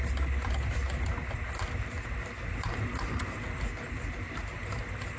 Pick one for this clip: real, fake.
real